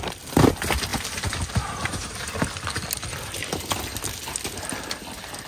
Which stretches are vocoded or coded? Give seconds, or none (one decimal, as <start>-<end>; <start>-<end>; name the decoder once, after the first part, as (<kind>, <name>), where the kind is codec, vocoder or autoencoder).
none